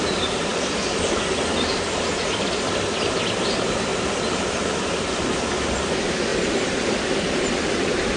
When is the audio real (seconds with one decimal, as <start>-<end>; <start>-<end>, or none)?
0.0-0.5; 2.5-3.9; 5.1-6.3; 7.1-8.2